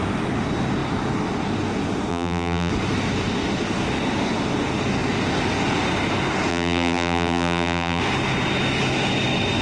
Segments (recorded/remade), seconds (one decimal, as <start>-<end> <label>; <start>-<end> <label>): 0.0-2.1 recorded; 2.1-2.7 remade; 2.7-6.5 recorded; 6.5-8.0 remade; 8.0-9.6 recorded